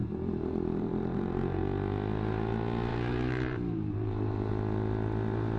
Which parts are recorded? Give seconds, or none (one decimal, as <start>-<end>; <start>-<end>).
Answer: 1.6-2.9; 4.5-5.6